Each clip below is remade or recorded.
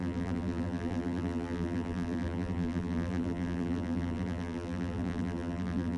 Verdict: remade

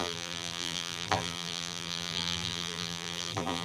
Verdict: remade